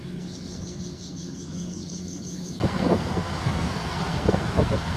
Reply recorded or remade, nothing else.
remade